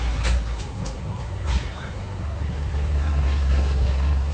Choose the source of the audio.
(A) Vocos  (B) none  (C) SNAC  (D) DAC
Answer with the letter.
C